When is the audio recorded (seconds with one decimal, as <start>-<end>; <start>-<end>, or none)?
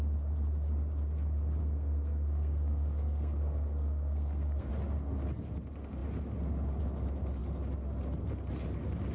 0.0-1.6; 4.7-9.1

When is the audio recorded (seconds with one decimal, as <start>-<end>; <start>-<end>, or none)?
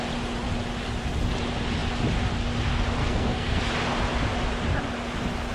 0.0-3.0; 3.7-5.5